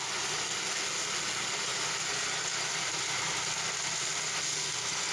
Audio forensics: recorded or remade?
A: recorded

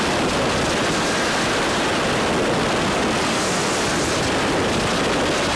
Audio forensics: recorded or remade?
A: recorded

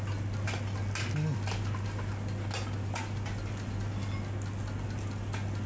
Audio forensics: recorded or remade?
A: recorded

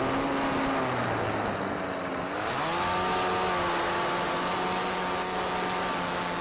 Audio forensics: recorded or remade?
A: recorded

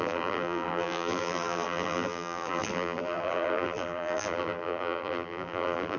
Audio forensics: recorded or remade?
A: remade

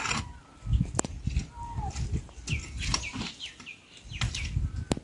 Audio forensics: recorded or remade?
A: recorded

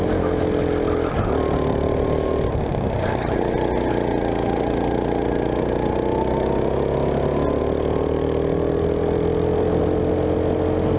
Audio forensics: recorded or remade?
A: recorded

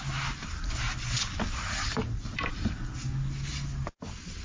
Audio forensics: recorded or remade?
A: recorded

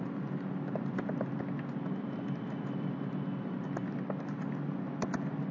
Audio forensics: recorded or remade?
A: recorded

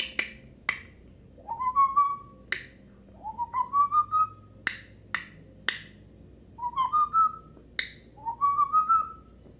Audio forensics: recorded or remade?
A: recorded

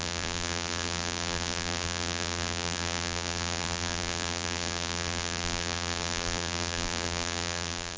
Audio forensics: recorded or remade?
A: remade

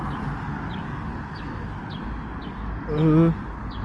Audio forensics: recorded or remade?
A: recorded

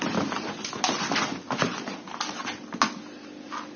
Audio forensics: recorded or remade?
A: recorded